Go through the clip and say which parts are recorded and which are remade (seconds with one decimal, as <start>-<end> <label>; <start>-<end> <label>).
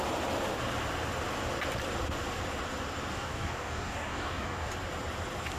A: 0.0-3.1 recorded; 3.1-4.7 remade; 4.7-5.6 recorded